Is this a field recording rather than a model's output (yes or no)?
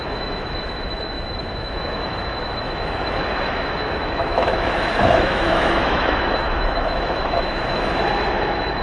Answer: no